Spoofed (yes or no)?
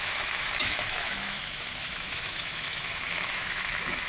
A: yes